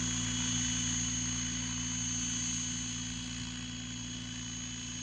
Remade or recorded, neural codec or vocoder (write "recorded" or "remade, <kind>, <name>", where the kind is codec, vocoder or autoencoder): recorded